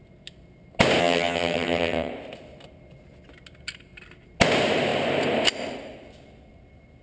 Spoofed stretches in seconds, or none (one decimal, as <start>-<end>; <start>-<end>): 1.0-2.1